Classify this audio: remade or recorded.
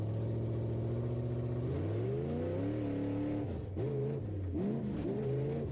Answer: recorded